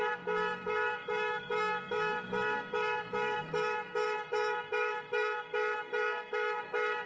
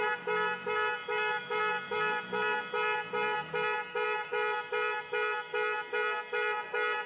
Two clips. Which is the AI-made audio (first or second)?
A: first